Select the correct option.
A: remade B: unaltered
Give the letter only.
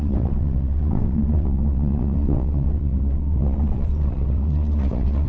A